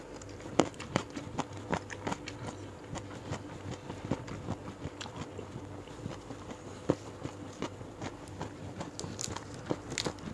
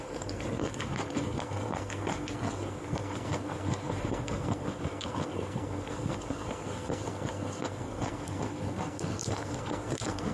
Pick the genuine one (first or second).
first